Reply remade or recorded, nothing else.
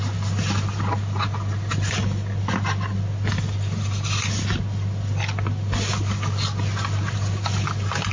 recorded